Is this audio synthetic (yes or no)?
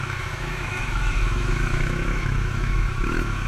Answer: yes